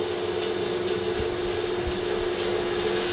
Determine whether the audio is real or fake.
real